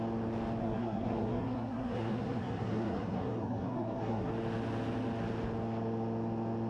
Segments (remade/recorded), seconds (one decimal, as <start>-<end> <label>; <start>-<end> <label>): 0.0-0.6 recorded; 0.6-4.3 remade; 4.3-6.7 recorded